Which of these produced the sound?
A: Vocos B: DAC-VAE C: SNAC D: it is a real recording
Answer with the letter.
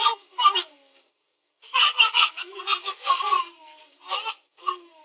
C